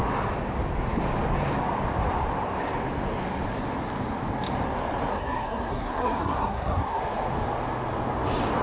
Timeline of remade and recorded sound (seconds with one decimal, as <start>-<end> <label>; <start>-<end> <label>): 0.0-5.1 recorded; 5.1-7.0 remade; 7.0-8.6 recorded